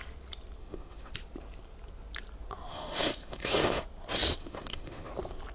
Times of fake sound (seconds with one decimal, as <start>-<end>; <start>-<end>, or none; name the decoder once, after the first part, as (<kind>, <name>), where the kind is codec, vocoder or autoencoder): 0.6-1.1 (autoencoder, DAC-VAE); 2.7-3.8; 4.4-5.1